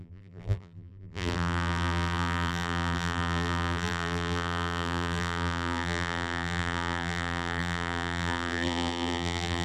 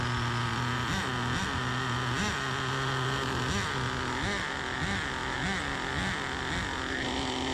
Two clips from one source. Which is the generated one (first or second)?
first